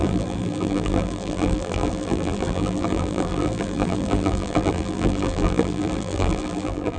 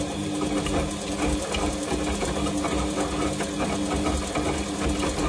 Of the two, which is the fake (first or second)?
first